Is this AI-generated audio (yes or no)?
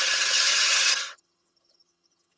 yes